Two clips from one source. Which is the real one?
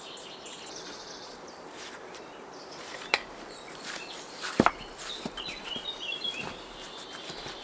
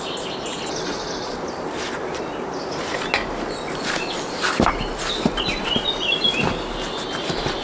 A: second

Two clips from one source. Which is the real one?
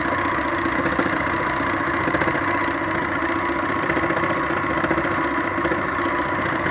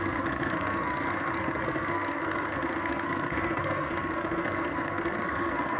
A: first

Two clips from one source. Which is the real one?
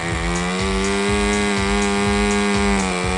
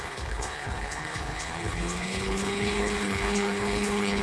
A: first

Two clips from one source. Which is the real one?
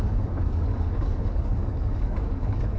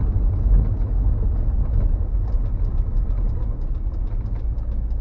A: second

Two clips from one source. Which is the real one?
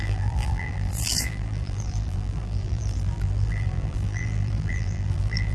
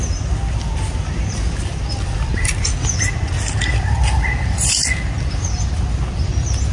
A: second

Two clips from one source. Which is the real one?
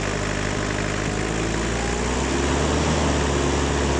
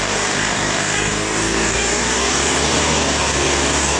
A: first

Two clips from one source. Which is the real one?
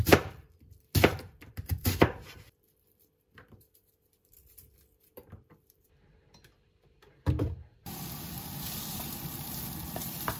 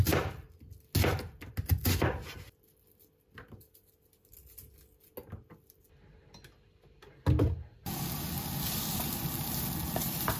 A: second